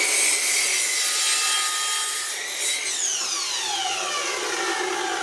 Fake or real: real